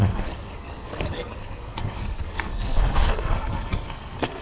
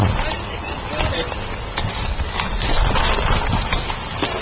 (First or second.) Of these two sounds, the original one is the second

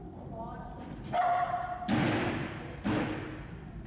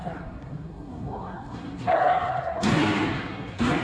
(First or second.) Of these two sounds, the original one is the first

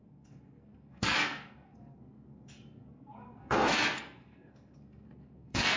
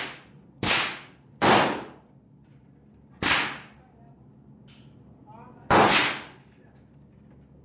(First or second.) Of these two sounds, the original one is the second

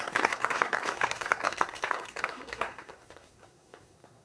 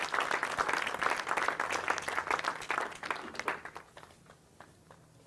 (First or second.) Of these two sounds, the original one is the second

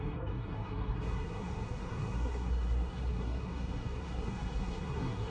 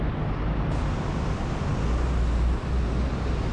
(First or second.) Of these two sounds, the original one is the second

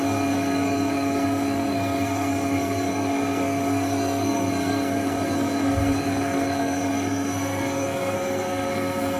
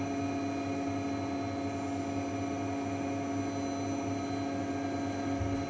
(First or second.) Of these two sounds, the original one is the second